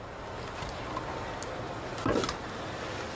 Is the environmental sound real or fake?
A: real